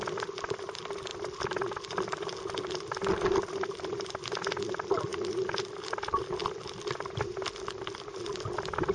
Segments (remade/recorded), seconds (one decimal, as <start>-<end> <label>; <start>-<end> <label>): 0.0-6.4 recorded; 6.4-8.1 remade; 8.1-8.9 recorded